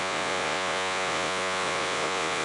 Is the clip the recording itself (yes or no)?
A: no